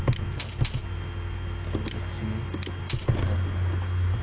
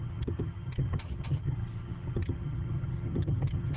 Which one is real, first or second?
first